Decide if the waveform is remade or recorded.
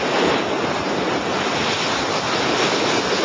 recorded